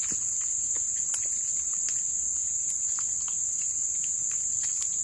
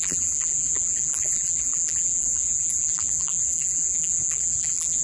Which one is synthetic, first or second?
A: second